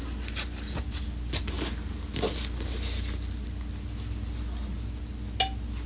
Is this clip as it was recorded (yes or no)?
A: yes